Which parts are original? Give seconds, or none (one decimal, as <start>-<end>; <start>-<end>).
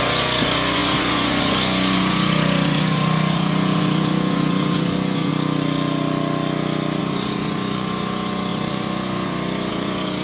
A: 5.3-7.0